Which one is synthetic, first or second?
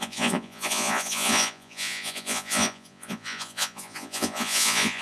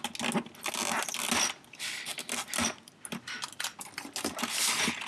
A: first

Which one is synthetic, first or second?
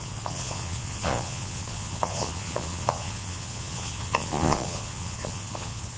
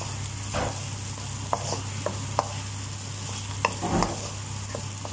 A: first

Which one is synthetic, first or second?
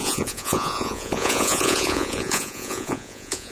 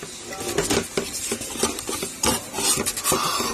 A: first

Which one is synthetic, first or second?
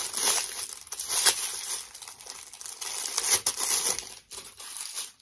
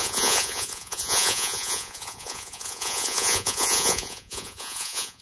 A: second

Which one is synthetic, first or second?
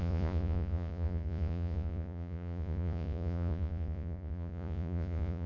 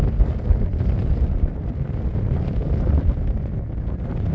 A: first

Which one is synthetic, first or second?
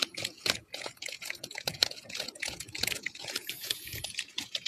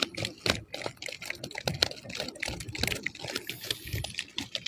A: first